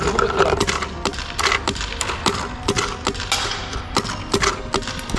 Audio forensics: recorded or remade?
recorded